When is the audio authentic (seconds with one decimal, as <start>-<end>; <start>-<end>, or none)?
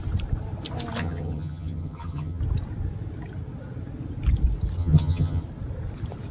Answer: 0.0-1.0; 2.4-4.8; 5.4-6.3